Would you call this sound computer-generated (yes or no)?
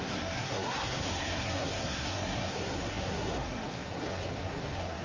yes